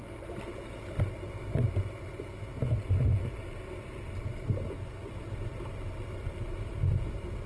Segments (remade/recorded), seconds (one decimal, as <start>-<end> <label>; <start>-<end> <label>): 0.0-7.5 recorded